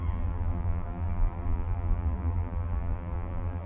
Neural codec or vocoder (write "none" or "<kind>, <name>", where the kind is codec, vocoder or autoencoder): vocoder, BigVGAN v2